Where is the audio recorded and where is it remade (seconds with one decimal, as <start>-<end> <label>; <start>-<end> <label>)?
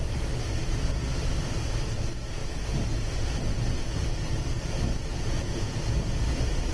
0.0-5.1 recorded; 5.1-5.7 remade; 5.7-6.7 recorded